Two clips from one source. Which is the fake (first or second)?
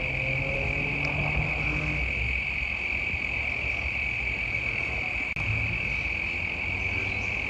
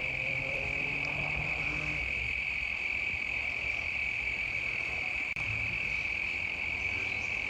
second